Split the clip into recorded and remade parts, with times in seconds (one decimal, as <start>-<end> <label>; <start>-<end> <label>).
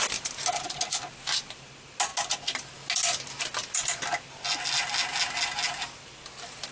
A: 0.0-6.7 recorded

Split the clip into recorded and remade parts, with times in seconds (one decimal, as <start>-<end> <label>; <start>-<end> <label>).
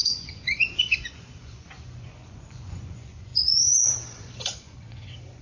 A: 0.0-5.4 remade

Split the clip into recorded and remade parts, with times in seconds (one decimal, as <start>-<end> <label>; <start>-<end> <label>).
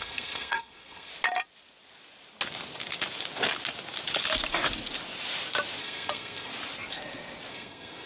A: 0.0-1.1 remade; 1.1-5.8 recorded; 5.8-6.5 remade; 6.5-7.5 recorded; 7.5-8.1 remade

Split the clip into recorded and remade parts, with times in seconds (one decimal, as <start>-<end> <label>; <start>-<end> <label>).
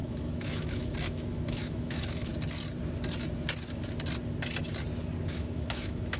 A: 0.0-2.3 remade; 2.3-5.3 recorded; 5.3-6.2 remade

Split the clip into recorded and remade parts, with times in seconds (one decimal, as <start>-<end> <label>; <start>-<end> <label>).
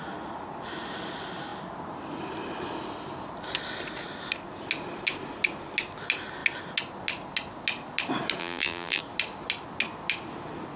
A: 0.0-8.4 recorded; 8.4-9.0 remade; 9.0-10.8 recorded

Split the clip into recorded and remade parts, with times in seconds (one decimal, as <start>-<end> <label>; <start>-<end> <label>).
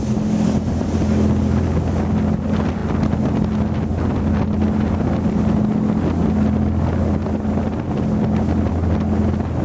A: 0.0-9.6 recorded